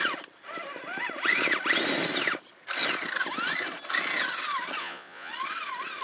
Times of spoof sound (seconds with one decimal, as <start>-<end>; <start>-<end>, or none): 4.8-5.3